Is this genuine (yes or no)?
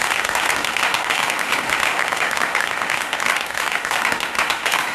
no